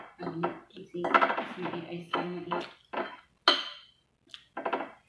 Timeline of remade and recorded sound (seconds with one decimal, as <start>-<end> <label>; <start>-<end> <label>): 0.0-2.0 recorded; 2.0-2.6 remade; 2.6-5.1 recorded